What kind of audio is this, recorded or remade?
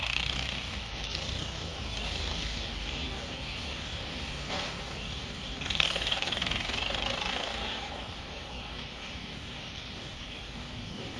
remade